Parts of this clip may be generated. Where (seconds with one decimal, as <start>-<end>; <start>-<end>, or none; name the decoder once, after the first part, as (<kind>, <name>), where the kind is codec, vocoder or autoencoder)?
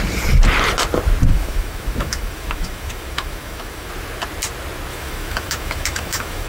1.3-3.9 (autoencoder, DAC-VAE); 4.9-6.5